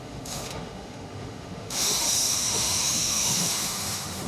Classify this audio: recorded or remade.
remade